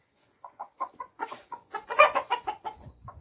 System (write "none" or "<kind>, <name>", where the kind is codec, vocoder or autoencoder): vocoder, Vocos